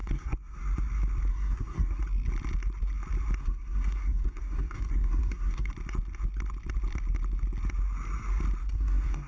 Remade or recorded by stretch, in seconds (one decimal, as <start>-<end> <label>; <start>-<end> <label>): 0.0-0.6 remade; 0.6-1.3 recorded; 1.3-2.0 remade; 2.0-3.4 recorded; 3.4-5.7 remade; 5.7-8.6 recorded; 8.6-9.3 remade